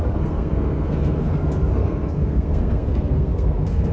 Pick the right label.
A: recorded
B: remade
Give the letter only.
B